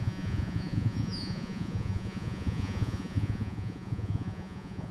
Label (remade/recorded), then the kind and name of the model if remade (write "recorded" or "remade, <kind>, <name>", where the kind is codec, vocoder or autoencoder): remade, vocoder, Vocos